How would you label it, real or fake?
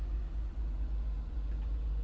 fake